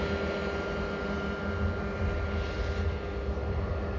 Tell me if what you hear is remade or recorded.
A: recorded